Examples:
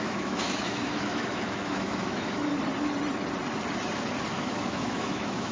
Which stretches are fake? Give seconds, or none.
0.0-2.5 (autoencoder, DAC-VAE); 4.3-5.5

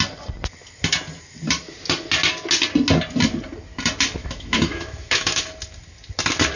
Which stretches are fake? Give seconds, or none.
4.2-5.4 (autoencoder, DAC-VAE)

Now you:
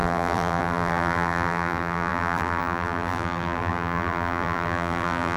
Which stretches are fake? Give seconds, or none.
0.0-5.4 (vocoder, BigVGAN v2)

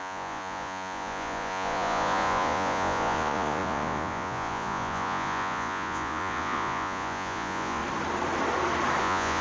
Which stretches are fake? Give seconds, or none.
0.0-7.8 (vocoder, Vocos); 9.0-9.4

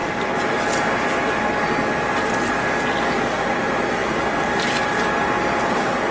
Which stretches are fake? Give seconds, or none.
none

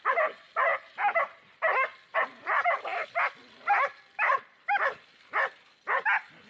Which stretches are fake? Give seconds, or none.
1.9-4.4 (vocoder, BigVGAN v2)

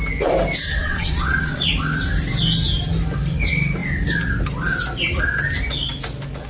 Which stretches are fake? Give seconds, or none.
0.7-1.7 (vocoder, WaveNeXt)